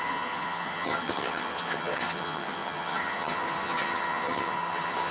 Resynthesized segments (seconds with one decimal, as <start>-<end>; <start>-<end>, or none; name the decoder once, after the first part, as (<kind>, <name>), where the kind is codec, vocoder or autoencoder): 0.0-5.1 (vocoder, HiFi-GAN)